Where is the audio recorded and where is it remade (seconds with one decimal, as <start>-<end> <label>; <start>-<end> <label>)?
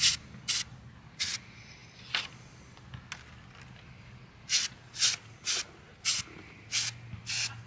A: 0.0-7.7 recorded